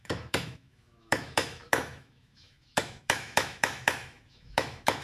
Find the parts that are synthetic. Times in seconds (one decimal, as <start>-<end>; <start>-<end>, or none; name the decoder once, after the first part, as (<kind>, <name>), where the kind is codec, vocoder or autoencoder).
0.0-5.0 (autoencoder, DAC-VAE)